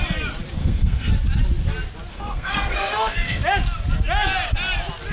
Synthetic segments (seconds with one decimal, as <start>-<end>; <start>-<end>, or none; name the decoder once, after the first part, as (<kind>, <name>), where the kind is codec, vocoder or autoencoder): 0.6-1.1 (codec, SNAC); 2.1-3.4